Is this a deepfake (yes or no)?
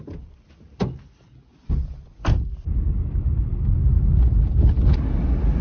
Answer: no